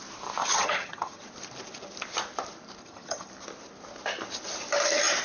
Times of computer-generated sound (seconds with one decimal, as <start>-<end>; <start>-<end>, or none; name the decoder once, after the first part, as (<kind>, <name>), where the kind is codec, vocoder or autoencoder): 0.4-1.2 (vocoder, HiFi-GAN); 2.8-3.3